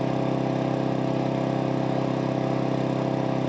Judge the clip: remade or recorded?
recorded